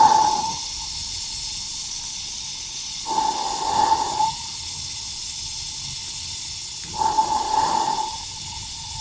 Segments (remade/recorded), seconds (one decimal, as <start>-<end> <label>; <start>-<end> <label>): 0.0-9.0 recorded